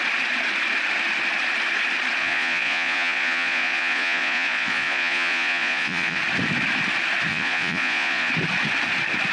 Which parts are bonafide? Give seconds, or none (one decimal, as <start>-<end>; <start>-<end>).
0.0-2.2; 6.2-7.3; 8.3-9.3